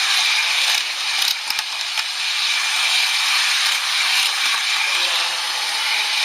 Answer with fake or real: real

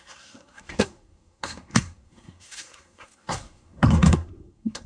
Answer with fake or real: fake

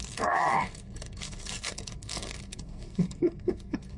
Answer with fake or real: fake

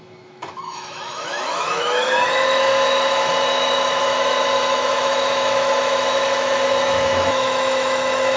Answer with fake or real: fake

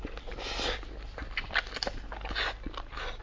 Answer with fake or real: real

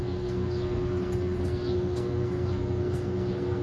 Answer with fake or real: fake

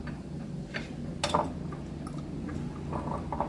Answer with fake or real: real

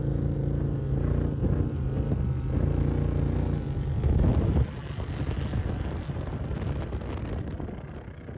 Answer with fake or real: real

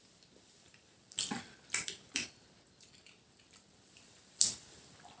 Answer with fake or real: fake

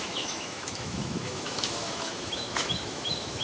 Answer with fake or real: fake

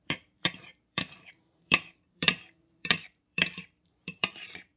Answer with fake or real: fake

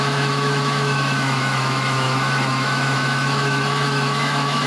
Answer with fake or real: fake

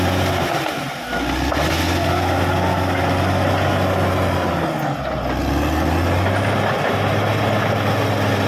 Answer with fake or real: real